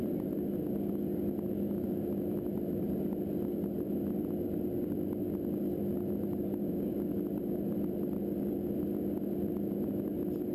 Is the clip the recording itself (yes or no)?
yes